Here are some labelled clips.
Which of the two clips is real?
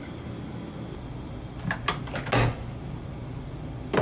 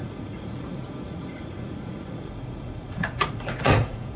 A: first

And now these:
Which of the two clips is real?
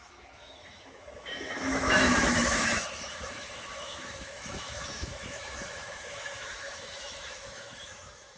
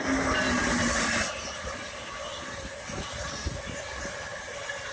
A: second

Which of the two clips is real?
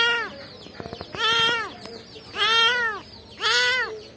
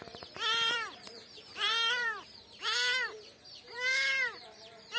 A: first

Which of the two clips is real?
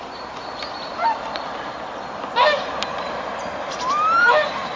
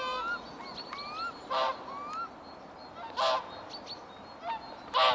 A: second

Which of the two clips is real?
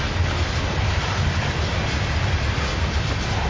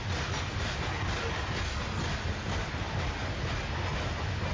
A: second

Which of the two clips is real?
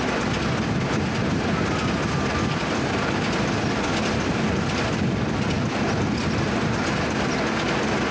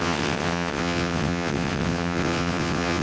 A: first